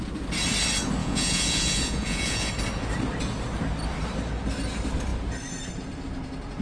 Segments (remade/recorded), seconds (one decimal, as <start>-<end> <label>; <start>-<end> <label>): 0.0-1.0 recorded; 1.0-2.5 remade; 2.5-6.6 recorded